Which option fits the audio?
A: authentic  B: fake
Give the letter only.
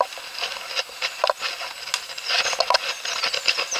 A